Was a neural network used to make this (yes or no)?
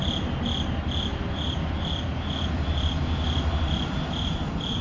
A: no